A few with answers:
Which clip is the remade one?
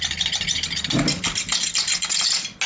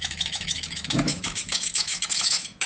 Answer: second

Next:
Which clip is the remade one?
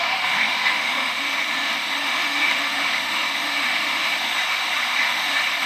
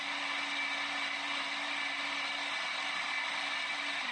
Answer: first